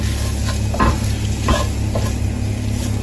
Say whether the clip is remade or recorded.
recorded